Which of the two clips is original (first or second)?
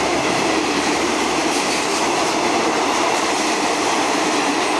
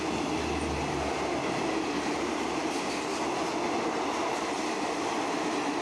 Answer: second